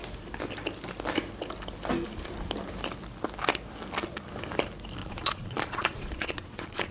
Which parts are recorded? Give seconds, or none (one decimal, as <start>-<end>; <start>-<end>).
0.0-5.0